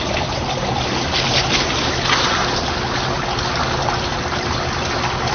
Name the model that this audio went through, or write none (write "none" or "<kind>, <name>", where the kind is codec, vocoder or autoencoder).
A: none